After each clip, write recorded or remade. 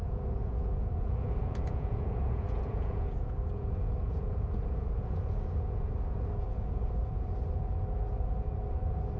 remade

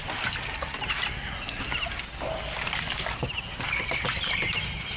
recorded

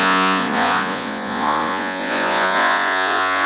remade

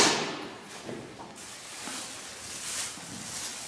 recorded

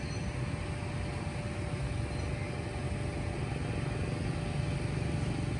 recorded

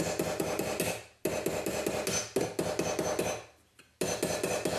recorded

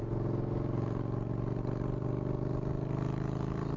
recorded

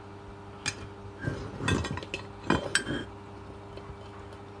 recorded